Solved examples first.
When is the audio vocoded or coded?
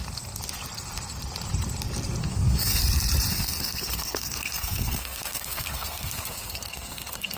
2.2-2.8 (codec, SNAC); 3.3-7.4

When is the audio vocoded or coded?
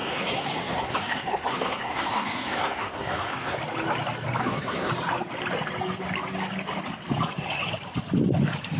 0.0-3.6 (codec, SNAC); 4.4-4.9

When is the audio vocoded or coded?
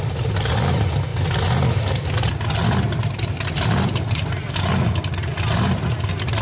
none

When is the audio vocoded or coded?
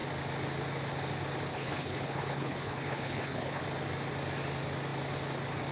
1.5-3.6 (codec, HILCodec)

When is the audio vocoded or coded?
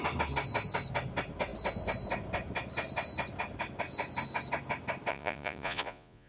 5.1-6.3 (vocoder, Vocos)